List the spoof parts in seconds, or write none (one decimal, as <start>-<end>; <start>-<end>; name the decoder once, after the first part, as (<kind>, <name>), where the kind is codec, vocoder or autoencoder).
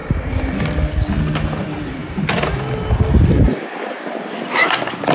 none